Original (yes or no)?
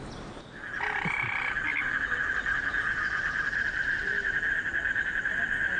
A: yes